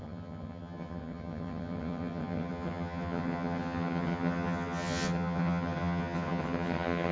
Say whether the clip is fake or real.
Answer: fake